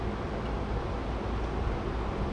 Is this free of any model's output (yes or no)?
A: yes